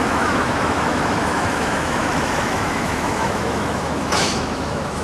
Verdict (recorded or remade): remade